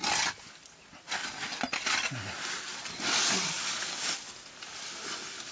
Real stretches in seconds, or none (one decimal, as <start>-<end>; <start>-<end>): 0.0-5.5